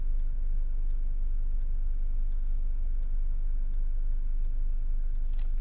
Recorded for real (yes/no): yes